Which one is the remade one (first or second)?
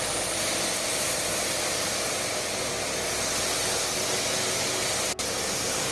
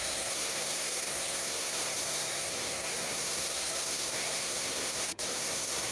second